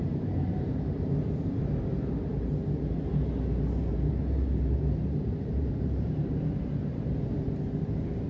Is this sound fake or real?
fake